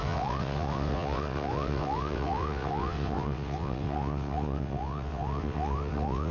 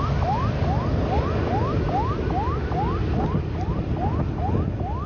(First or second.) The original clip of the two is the second